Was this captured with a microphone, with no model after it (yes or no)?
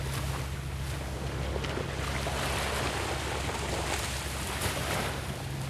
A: yes